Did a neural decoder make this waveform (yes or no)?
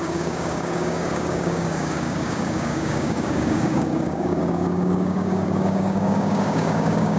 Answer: yes